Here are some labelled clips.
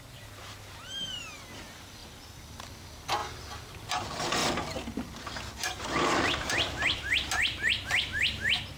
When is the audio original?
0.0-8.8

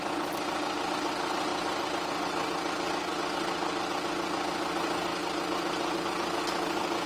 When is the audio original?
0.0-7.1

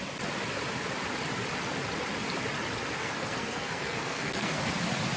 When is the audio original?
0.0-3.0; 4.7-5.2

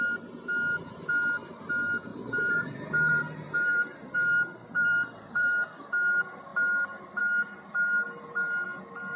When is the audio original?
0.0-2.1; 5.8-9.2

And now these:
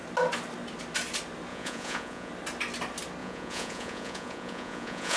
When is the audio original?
0.0-1.5; 2.3-3.2

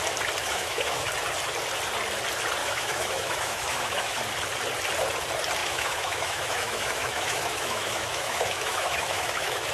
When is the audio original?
0.0-0.4; 1.1-2.6; 4.2-5.6

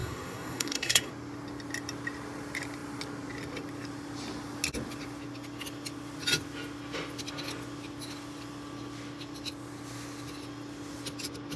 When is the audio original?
1.1-11.6